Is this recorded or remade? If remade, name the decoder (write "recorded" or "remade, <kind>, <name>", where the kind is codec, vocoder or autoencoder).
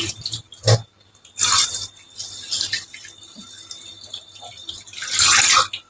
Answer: recorded